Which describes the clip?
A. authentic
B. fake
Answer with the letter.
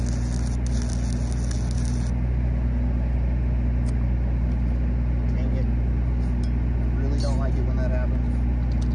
A